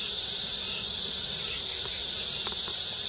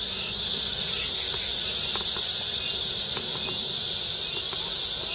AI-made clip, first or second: first